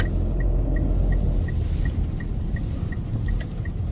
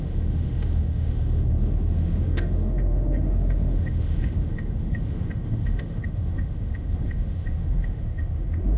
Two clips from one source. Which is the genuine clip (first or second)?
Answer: first